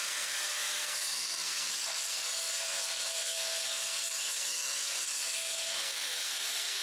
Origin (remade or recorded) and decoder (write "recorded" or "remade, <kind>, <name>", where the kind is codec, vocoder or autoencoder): remade, codec, SNAC